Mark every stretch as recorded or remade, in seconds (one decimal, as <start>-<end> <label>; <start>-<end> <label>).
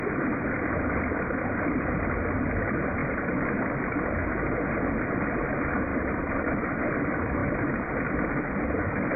0.0-5.9 recorded; 5.9-7.0 remade; 7.0-9.2 recorded